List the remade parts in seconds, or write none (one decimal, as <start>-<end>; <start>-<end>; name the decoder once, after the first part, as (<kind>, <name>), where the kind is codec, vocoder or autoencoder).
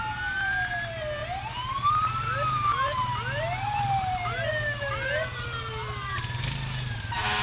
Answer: none